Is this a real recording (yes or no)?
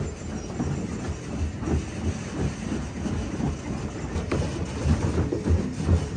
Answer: yes